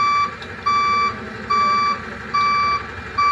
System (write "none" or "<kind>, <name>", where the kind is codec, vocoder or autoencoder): none